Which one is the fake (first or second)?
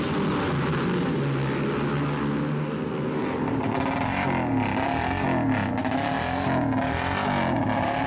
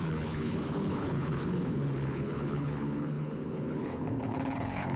second